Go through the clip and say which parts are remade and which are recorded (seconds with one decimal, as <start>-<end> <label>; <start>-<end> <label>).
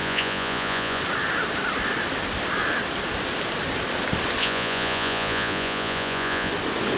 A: 0.0-1.0 remade; 1.0-4.4 recorded; 4.4-6.5 remade; 6.5-7.0 recorded